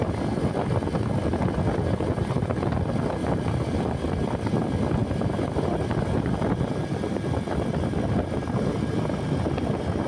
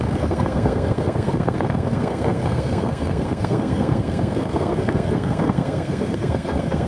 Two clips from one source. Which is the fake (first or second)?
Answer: second